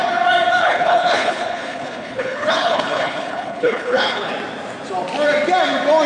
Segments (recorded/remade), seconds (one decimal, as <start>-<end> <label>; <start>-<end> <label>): 0.0-0.6 recorded; 0.6-4.3 remade; 4.3-6.1 recorded